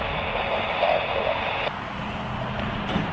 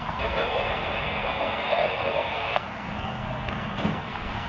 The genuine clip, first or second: first